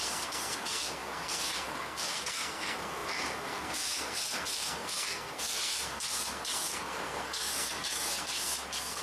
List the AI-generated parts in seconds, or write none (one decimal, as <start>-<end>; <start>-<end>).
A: 0.0-9.0